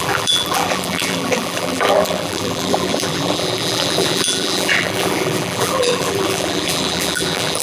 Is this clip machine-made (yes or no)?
yes